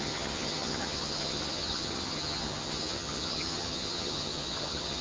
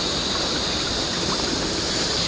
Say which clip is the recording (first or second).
second